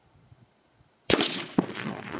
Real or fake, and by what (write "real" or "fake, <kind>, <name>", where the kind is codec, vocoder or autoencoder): fake, vocoder, Vocos